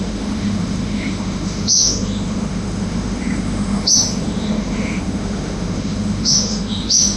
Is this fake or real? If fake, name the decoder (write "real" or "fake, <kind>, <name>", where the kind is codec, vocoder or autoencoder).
fake, autoencoder, DAC-VAE